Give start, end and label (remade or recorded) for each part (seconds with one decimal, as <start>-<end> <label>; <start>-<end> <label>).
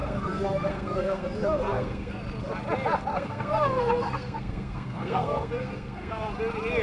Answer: 0.0-2.2 remade; 2.2-3.1 recorded; 3.1-6.3 remade; 6.3-6.8 recorded